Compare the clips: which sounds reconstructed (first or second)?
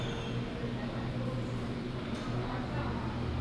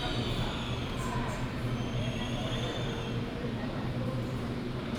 second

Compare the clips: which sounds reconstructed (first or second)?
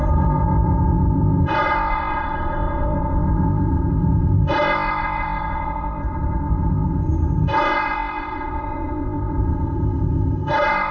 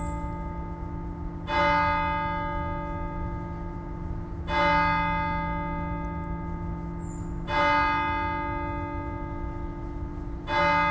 first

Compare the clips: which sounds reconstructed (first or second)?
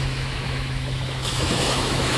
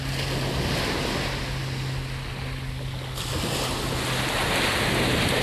first